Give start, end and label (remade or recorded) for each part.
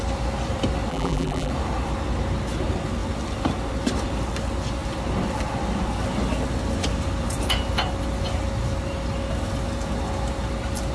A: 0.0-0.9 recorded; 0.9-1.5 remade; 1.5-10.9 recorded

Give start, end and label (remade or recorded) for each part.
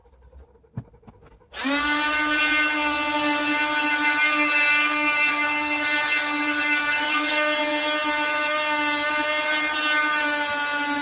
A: 0.0-4.7 recorded; 4.7-7.6 remade; 7.6-11.0 recorded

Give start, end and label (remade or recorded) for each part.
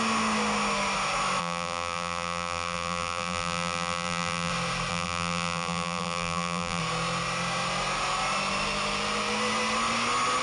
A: 0.0-1.4 recorded; 1.4-4.5 remade; 4.5-4.9 recorded; 4.9-6.8 remade; 6.8-10.4 recorded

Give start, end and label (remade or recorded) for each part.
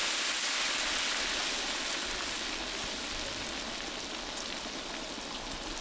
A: 0.0-5.8 recorded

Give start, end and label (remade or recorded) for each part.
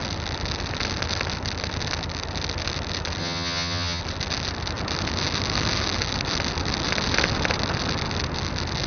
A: 0.0-3.2 recorded; 3.2-4.0 remade; 4.0-8.9 recorded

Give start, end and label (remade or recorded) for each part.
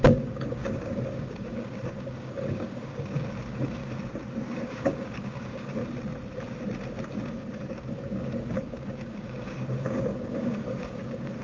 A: 0.0-3.8 remade; 3.8-4.4 recorded; 4.4-5.8 remade; 5.8-7.1 recorded; 7.1-11.4 remade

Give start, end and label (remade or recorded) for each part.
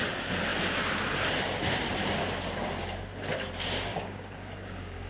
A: 0.0-3.9 recorded; 3.9-5.1 remade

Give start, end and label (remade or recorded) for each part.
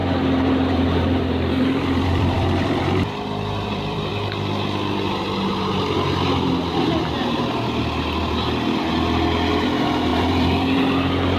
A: 0.0-4.1 remade; 4.1-8.2 recorded; 8.2-8.8 remade; 8.8-10.1 recorded; 10.1-10.8 remade; 10.8-11.4 recorded